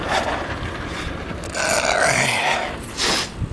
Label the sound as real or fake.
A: real